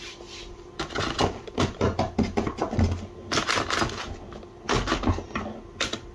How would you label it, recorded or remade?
recorded